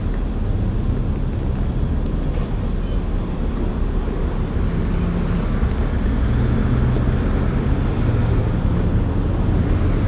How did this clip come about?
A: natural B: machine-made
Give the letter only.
A